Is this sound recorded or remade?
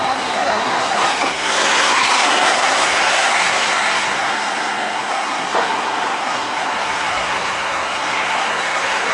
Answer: remade